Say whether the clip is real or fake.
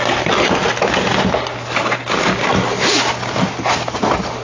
real